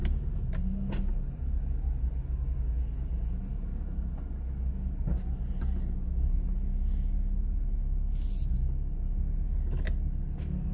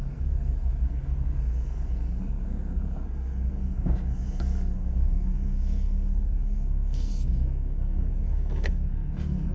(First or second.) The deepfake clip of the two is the second